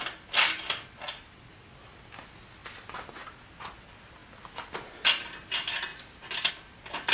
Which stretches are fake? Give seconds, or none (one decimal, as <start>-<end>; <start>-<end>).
none